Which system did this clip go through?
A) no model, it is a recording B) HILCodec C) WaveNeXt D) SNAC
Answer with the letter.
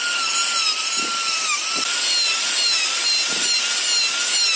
A